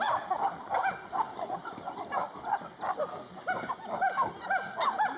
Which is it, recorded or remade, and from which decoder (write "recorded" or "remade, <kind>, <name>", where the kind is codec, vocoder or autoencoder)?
recorded